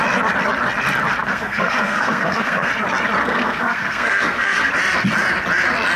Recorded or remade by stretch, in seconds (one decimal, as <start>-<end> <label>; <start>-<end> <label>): 0.0-1.2 recorded; 1.2-2.7 remade; 2.7-3.2 recorded; 3.2-4.7 remade; 4.7-6.0 recorded